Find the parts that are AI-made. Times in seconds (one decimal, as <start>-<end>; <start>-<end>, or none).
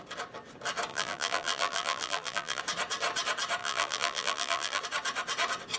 0.9-2.6; 3.6-4.8